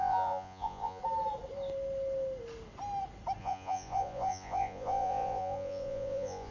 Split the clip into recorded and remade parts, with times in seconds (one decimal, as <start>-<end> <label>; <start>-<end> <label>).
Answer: 0.0-1.0 remade; 1.0-3.4 recorded; 3.4-6.5 remade